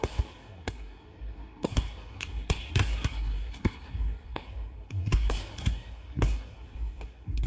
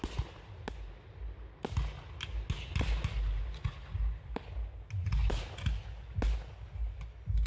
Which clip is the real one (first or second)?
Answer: second